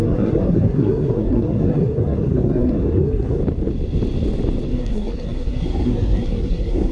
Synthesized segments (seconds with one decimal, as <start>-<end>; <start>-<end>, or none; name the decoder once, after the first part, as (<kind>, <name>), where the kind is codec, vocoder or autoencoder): 0.0-3.4 (codec, SNAC); 4.7-6.9